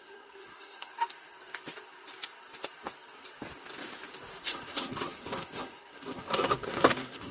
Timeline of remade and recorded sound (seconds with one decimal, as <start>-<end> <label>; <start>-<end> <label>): 0.0-0.9 remade; 0.9-4.5 recorded; 4.5-7.3 remade